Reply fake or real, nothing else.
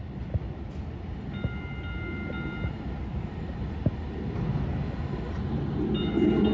real